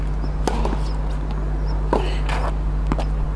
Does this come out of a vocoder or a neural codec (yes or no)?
no